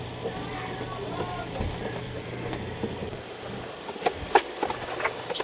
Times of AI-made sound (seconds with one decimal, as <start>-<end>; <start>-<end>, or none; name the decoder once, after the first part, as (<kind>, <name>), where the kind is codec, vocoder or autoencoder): 2.0-2.6 (codec, SNAC)